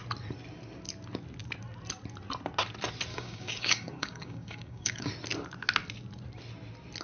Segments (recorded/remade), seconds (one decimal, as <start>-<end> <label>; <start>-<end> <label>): 0.0-3.1 recorded; 3.1-5.1 remade; 5.1-7.0 recorded